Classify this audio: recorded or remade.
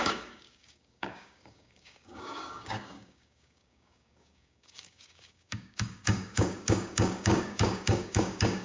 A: remade